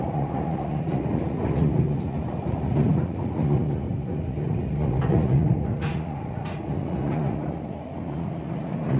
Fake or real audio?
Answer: fake